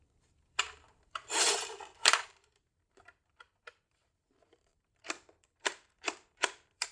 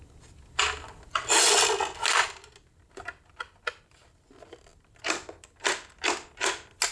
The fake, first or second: first